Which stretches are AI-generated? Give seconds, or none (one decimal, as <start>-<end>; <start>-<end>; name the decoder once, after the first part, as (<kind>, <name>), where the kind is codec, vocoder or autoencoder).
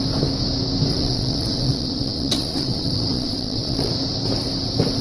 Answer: 0.9-3.9 (vocoder, Vocos)